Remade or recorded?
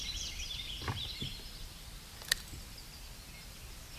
recorded